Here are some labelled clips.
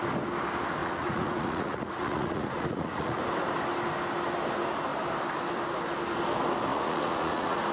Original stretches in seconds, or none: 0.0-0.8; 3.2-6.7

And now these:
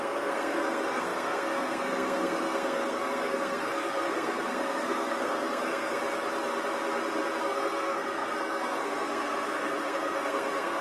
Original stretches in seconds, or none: 6.0-7.4

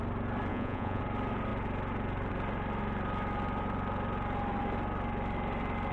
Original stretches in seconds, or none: 0.0-0.5; 1.0-5.9

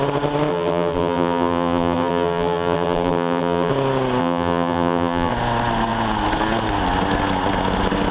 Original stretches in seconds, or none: 0.0-0.5; 3.7-4.2; 5.3-8.1

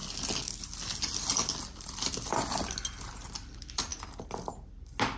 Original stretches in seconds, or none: 0.0-5.2

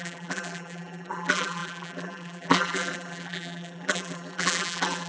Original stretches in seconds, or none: none

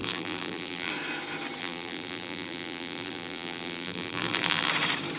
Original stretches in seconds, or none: 0.9-1.6; 4.7-5.2

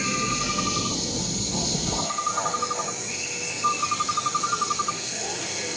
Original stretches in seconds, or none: 2.3-3.1; 3.7-4.9